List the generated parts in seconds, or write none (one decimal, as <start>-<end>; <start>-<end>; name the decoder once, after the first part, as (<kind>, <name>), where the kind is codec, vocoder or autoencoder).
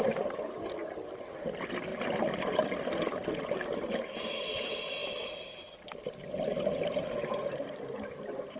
none